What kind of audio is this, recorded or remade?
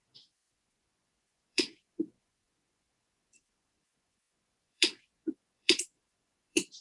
remade